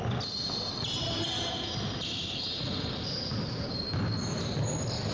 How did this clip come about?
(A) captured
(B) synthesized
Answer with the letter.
A